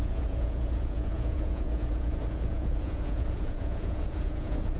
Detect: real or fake fake